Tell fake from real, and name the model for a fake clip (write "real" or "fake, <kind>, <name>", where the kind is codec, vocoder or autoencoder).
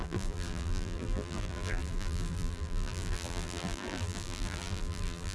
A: fake, vocoder, BigVGAN v2